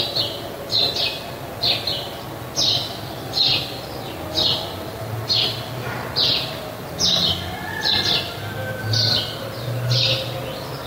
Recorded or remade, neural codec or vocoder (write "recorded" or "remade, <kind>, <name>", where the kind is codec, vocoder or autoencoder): recorded